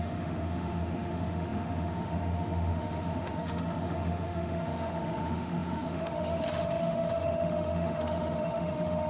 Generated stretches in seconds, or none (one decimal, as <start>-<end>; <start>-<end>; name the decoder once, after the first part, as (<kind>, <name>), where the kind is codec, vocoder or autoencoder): 0.0-9.1 (autoencoder, DAC-VAE)